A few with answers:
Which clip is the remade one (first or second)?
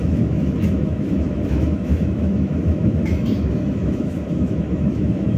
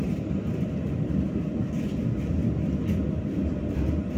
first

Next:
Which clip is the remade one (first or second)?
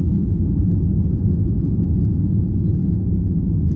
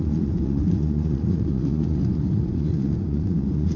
second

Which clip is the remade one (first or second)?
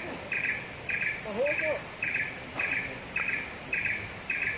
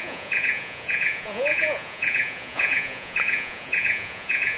second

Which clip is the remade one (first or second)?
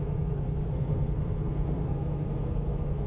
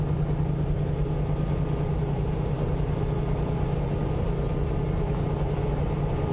first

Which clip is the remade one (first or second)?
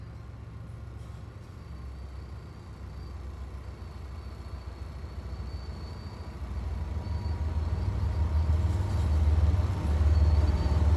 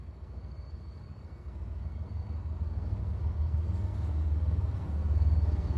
second